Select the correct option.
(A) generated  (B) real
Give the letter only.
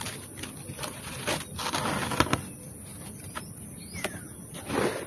B